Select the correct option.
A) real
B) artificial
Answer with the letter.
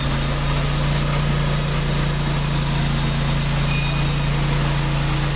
A